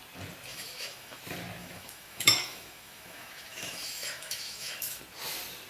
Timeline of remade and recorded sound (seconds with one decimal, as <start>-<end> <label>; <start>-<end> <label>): 0.0-0.5 recorded; 0.5-1.2 remade; 1.2-1.6 recorded; 1.6-5.0 remade; 5.0-5.7 recorded